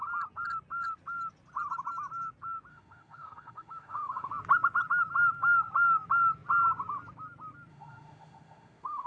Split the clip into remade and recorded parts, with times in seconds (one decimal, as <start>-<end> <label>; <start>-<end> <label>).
0.0-2.7 recorded; 2.7-4.3 remade; 4.3-7.7 recorded; 7.7-9.1 remade